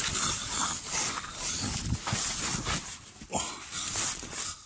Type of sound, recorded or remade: recorded